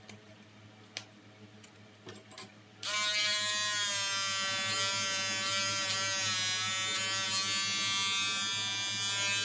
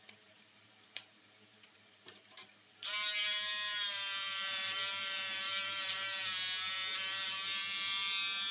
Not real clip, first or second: second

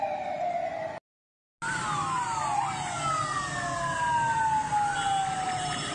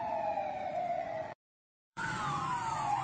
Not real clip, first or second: second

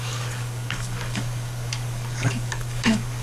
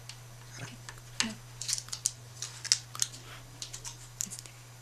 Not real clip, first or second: first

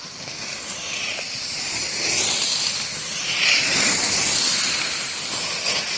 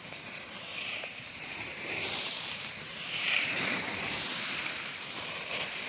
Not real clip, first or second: second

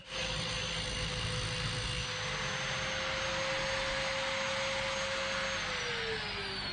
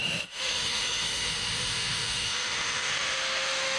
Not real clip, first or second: second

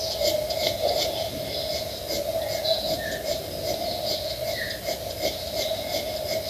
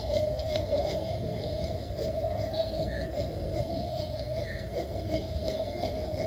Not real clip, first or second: second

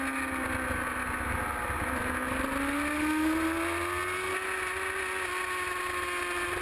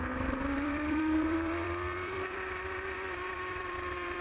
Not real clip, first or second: second